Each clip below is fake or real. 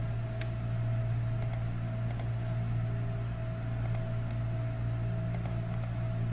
real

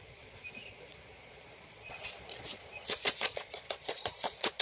fake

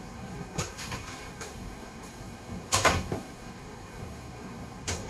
fake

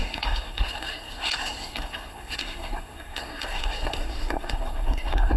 fake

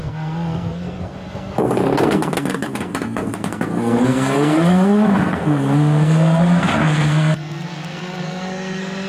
fake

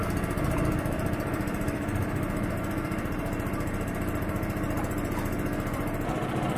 fake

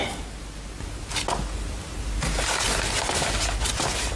real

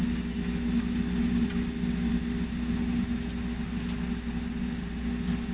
real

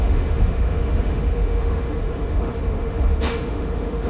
fake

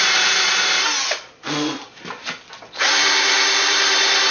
fake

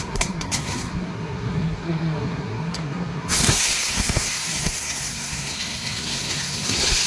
fake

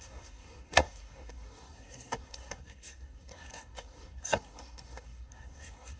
fake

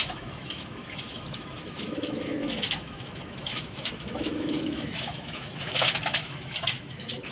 fake